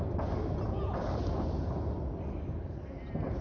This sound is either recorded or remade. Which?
recorded